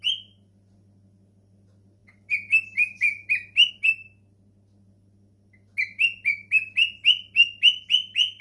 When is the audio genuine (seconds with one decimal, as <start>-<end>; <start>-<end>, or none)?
0.0-8.4